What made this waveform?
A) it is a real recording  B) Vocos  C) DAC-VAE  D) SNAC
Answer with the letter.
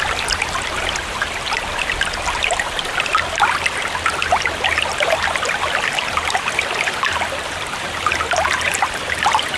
A